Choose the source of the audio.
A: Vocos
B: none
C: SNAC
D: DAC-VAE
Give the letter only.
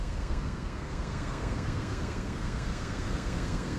C